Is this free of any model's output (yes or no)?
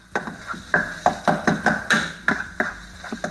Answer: yes